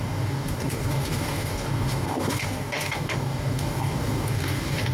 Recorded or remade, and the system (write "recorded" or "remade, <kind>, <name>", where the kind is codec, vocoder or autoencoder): remade, codec, DAC